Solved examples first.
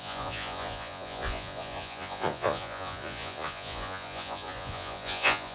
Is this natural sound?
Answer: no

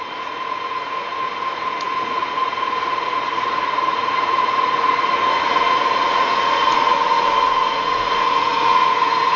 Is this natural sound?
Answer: no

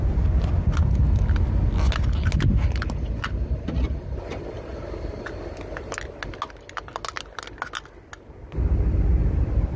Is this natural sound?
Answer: yes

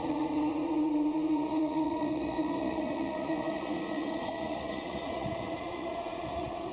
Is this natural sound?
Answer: no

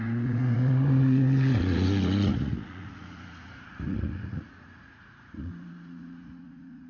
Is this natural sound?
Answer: no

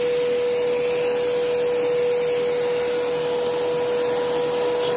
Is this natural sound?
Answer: yes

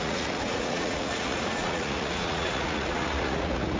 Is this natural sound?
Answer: no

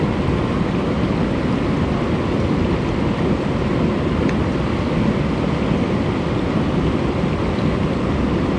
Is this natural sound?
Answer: yes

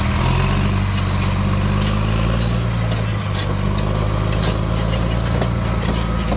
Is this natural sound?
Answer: yes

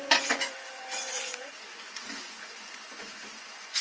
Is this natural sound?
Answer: no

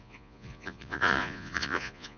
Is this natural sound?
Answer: no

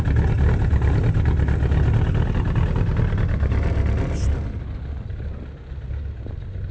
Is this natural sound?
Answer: yes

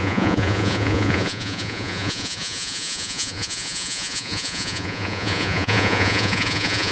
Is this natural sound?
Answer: no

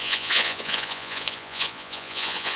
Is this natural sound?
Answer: no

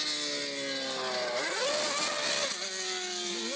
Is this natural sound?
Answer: yes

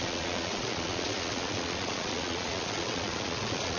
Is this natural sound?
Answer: no